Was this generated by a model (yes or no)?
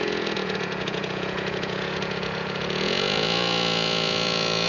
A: yes